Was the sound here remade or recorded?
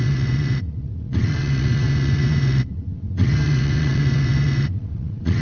remade